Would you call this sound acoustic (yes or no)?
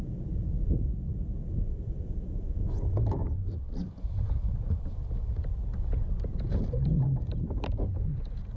yes